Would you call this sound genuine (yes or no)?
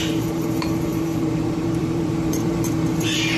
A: no